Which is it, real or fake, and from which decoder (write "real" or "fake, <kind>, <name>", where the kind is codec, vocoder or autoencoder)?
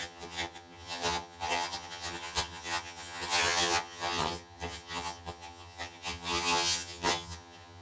fake, vocoder, HiFi-GAN